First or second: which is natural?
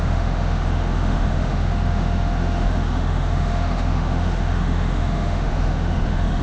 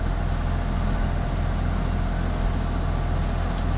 second